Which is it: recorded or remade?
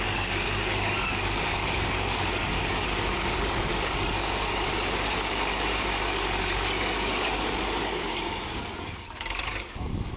remade